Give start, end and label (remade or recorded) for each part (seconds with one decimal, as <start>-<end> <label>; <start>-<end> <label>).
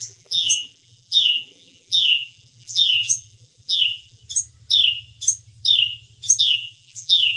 0.0-4.2 remade; 4.2-6.4 recorded; 6.4-7.4 remade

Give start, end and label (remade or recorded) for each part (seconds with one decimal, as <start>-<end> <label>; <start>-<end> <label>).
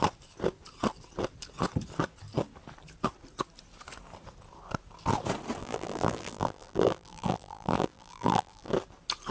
0.0-5.6 recorded; 5.6-8.7 remade; 8.7-9.3 recorded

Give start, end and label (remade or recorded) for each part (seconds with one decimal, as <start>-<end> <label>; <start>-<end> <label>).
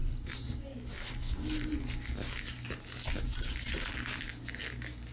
0.0-5.1 recorded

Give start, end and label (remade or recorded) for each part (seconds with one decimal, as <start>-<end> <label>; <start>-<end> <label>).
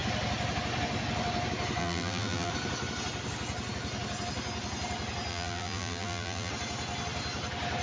0.0-1.8 recorded; 1.8-2.5 remade; 2.5-5.3 recorded; 5.3-6.5 remade; 6.5-7.8 recorded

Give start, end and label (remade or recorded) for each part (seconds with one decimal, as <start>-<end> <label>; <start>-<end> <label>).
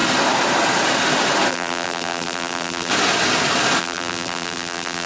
0.0-1.5 recorded; 1.5-2.9 remade; 2.9-3.8 recorded; 3.8-5.1 remade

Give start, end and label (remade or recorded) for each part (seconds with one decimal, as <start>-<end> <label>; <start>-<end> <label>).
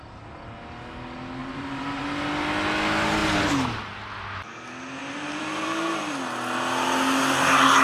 0.0-1.4 recorded; 1.4-2.0 remade; 2.0-5.0 recorded; 5.0-6.1 remade; 6.1-7.8 recorded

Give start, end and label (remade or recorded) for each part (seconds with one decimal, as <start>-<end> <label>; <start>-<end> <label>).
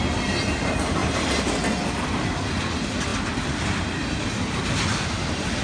0.0-5.6 recorded